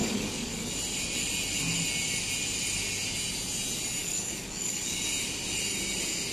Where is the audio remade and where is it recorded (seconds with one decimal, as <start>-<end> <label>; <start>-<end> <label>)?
0.0-0.7 remade; 0.7-4.0 recorded; 4.0-5.0 remade; 5.0-6.3 recorded

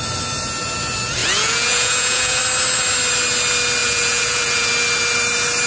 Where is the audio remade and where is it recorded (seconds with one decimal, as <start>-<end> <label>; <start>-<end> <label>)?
0.0-1.2 recorded; 1.2-2.4 remade; 2.4-3.8 recorded; 3.8-4.7 remade; 4.7-5.7 recorded